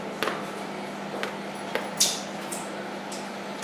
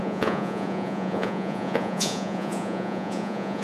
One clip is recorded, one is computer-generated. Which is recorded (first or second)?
first